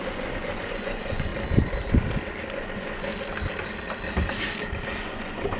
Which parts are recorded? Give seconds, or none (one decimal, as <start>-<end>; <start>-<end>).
1.3-2.5; 3.1-5.0

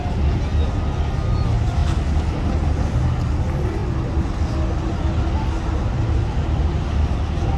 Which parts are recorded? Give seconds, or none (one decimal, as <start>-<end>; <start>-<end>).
0.0-7.6

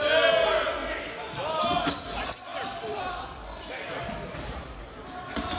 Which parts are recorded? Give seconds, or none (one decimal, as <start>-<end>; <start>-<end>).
0.0-2.5; 4.8-5.6

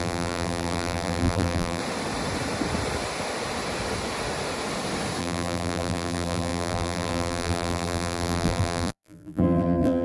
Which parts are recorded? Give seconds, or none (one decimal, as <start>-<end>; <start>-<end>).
1.8-5.2